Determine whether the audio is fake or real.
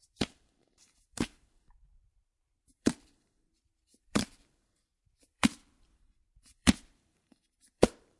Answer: fake